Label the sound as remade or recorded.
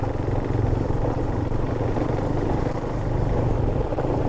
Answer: remade